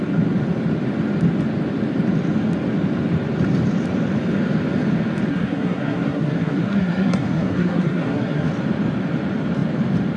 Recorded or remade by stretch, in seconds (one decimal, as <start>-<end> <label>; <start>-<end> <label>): 0.0-5.3 recorded; 5.3-8.5 remade; 8.5-10.2 recorded